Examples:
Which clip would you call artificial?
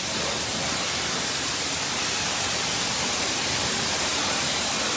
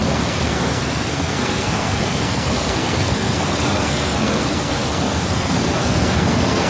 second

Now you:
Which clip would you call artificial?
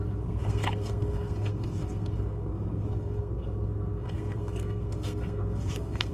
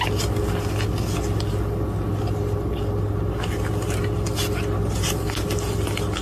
first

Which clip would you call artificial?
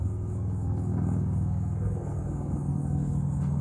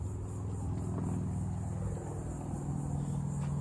first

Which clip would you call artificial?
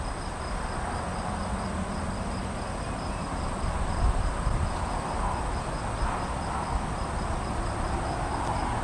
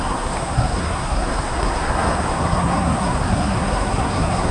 second